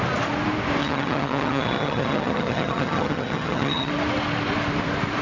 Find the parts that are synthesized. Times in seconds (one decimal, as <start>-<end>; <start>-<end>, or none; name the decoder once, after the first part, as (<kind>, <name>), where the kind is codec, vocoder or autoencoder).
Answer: 0.8-3.9 (vocoder, HiFi-GAN)